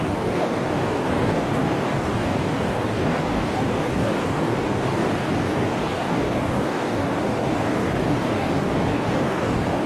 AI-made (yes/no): yes